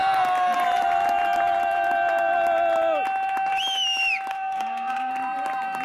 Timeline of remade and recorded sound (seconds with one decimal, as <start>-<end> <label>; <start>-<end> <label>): 0.0-4.3 recorded; 4.3-5.1 remade; 5.1-5.8 recorded